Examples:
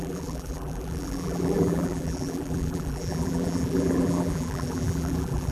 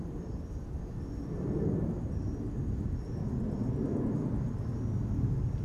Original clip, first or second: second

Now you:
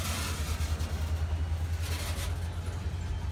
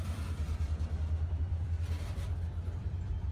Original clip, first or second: first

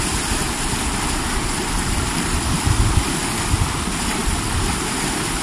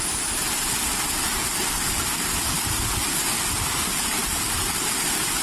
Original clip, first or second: first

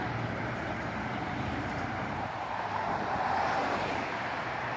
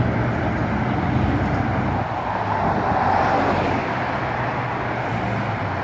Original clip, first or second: second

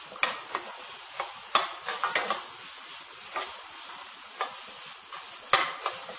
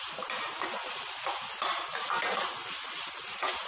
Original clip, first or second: first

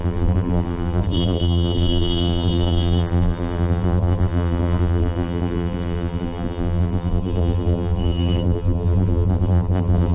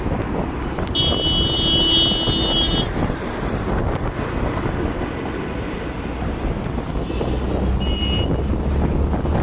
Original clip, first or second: second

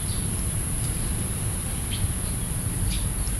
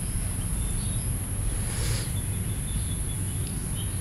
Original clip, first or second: second